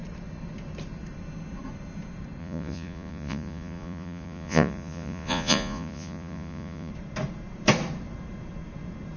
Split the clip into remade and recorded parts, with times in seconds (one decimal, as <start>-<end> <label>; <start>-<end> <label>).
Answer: 0.0-2.4 recorded; 2.4-6.9 remade; 6.9-9.2 recorded